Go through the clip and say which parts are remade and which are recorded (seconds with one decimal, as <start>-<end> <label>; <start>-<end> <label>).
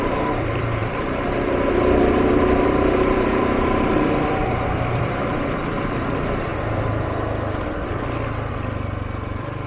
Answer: 0.0-6.5 remade; 6.5-8.5 recorded; 8.5-9.7 remade